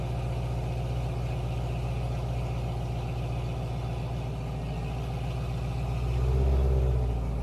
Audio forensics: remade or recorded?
recorded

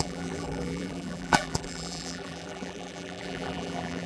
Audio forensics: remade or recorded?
remade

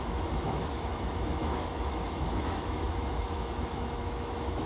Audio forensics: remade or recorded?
remade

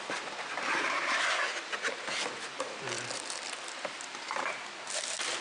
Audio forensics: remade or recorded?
remade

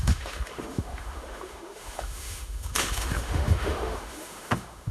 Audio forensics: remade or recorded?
remade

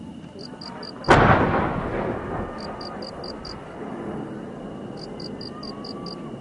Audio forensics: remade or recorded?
recorded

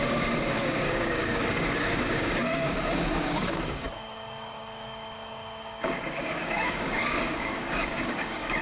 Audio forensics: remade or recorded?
remade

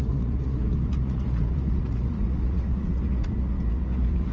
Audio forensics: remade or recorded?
remade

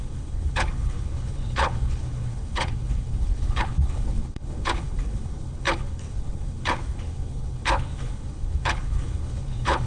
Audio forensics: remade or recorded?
remade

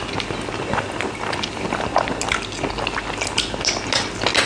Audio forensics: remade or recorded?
recorded